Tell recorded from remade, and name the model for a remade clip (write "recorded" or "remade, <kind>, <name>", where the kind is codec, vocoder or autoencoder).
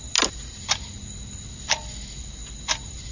recorded